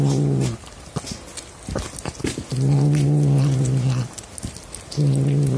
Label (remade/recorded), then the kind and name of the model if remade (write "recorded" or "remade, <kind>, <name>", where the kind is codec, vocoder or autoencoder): recorded